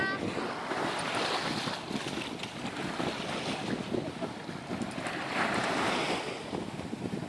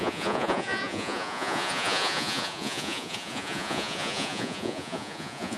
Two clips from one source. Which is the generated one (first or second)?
second